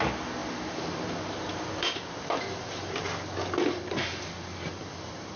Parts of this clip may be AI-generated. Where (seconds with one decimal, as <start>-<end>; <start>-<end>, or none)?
none